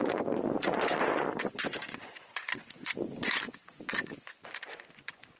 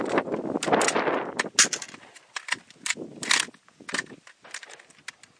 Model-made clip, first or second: first